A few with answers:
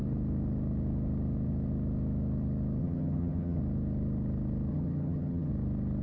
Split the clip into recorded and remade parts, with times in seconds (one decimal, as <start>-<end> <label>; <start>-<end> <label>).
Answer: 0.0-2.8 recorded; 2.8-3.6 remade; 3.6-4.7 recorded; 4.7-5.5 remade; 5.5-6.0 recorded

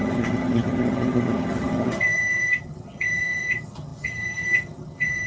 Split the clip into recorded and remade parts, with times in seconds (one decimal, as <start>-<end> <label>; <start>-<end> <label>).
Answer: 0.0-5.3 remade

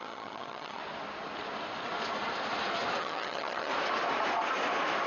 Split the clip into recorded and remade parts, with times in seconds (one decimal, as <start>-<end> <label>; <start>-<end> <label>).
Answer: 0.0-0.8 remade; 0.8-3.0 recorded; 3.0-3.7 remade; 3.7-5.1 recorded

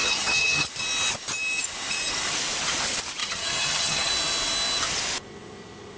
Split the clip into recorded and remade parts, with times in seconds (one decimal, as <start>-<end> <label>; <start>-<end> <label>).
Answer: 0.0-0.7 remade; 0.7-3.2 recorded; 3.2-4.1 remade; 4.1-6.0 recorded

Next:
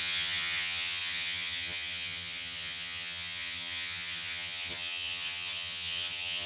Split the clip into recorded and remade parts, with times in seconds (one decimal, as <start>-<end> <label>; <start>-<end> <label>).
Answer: 0.0-6.5 remade

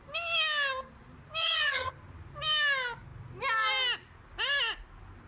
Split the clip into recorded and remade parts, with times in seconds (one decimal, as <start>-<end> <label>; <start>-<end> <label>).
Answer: 0.0-1.4 recorded; 1.4-1.9 remade; 1.9-5.3 recorded

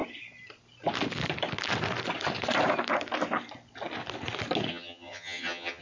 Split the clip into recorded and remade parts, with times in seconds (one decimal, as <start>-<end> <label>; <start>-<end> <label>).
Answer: 0.0-4.7 recorded; 4.7-5.8 remade

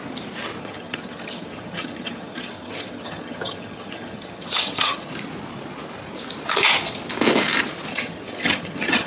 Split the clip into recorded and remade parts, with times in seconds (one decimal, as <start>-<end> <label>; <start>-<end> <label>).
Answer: 0.0-0.6 recorded; 0.6-5.1 remade; 5.1-7.9 recorded; 7.9-9.1 remade